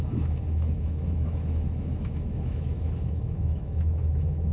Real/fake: fake